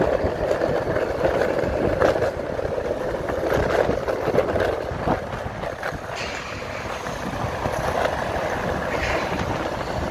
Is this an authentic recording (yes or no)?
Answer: yes